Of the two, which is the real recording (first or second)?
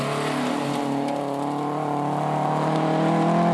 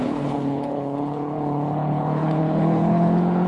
first